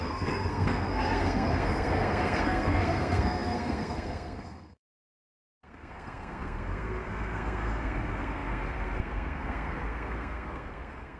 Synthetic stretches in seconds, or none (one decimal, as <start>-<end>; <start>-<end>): 0.0-11.2